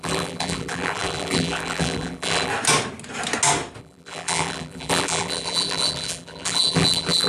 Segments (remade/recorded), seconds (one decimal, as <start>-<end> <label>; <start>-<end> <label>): 0.0-2.5 remade; 2.5-3.8 recorded; 3.8-7.3 remade